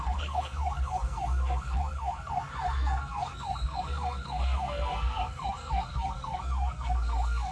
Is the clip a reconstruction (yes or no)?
yes